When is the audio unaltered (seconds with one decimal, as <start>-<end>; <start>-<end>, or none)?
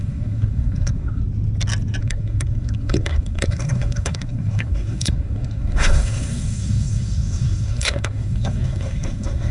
1.2-2.0